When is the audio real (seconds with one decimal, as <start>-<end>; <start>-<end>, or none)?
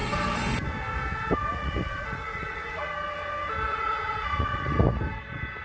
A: 0.0-1.5; 2.9-3.7; 5.0-5.6